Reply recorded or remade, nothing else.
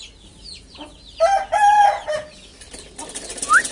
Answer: recorded